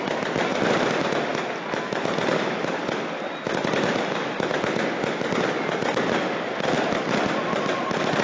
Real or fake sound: real